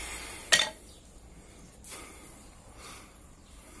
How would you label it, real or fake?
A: real